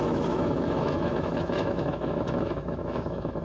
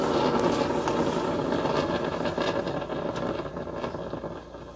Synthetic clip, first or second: first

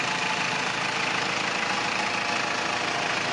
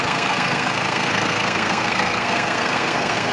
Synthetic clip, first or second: second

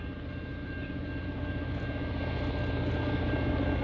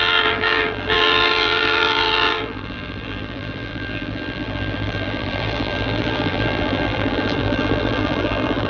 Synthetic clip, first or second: second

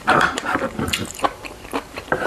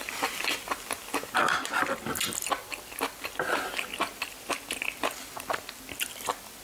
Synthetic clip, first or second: first